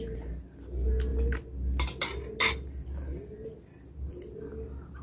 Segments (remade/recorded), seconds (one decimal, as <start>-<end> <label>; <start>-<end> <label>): 0.0-5.0 recorded